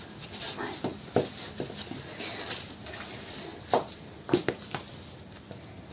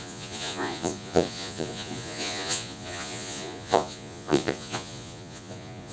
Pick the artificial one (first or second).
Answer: second